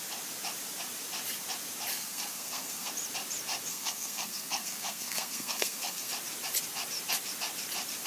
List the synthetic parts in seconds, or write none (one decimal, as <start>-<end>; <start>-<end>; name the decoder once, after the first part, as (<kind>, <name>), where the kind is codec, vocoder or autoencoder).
1.9-2.9 (codec, SNAC); 3.7-6.1